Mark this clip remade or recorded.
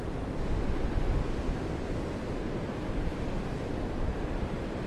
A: recorded